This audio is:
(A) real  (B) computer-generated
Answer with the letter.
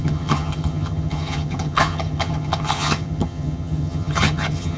B